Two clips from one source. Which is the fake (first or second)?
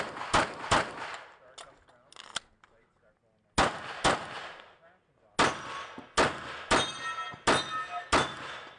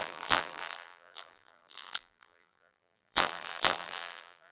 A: second